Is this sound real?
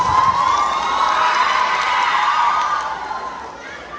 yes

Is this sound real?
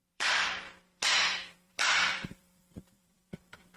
no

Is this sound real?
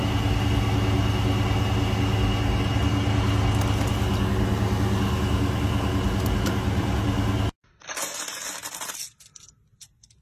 yes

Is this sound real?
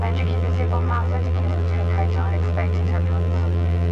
no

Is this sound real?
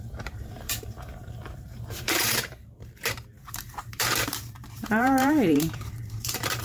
no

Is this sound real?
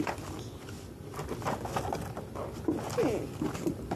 yes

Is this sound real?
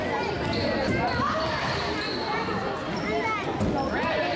yes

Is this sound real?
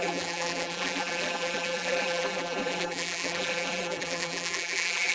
no